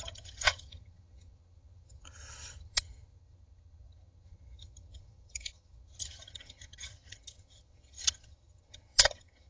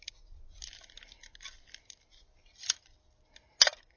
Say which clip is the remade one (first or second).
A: first